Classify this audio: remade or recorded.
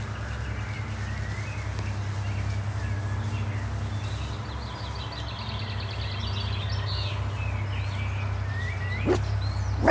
recorded